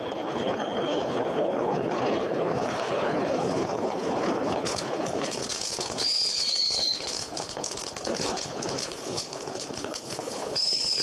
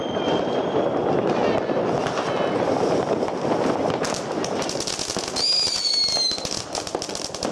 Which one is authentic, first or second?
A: second